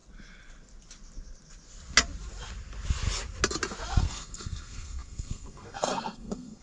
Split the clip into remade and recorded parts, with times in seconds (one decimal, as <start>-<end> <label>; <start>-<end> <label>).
0.0-4.0 recorded; 4.0-6.6 remade